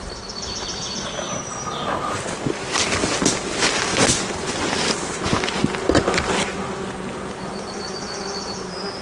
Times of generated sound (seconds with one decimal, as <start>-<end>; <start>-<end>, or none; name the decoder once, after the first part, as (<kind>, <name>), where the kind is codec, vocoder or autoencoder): 3.9-4.7 (vocoder, Vocos)